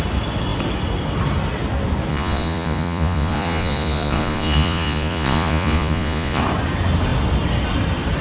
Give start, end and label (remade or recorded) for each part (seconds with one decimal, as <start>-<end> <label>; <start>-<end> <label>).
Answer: 0.0-2.1 recorded; 2.1-6.4 remade; 6.4-8.2 recorded